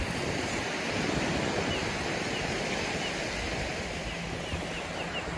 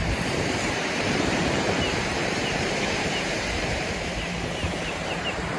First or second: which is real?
first